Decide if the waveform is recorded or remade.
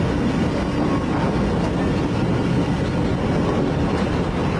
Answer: recorded